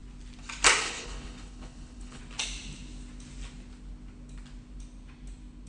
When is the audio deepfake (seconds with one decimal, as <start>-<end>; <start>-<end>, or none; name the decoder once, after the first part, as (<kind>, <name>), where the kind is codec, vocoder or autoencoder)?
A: 0.8-2.2 (codec, HILCodec)

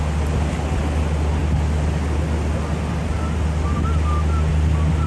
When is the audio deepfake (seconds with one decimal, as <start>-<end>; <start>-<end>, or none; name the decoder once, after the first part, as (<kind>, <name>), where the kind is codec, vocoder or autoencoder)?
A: none

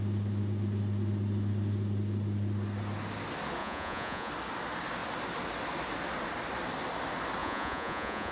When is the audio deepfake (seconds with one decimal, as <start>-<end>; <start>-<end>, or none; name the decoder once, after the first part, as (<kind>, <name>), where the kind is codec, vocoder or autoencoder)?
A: 3.6-4.3 (vocoder, Vocos); 7.4-8.3

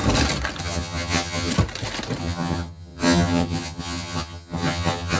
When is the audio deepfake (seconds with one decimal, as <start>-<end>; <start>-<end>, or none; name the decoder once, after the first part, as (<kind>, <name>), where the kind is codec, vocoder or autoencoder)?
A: 0.6-1.5 (vocoder, HiFi-GAN); 2.2-5.2

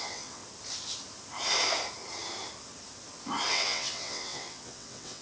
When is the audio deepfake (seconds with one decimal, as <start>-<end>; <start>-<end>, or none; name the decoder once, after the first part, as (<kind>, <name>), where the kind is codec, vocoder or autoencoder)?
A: 0.0-0.4 (vocoder, WaveNeXt); 3.5-5.2

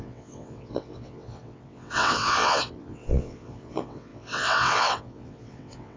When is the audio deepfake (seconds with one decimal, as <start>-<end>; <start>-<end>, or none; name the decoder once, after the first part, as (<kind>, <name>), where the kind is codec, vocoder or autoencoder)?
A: 0.0-6.0 (vocoder, WaveNeXt)

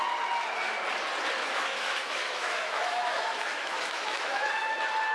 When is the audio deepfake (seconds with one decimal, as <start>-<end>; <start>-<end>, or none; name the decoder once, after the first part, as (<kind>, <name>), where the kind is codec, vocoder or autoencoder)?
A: 1.4-4.5 (autoencoder, DAC-VAE)